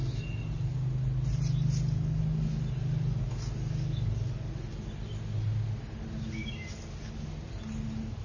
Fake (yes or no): no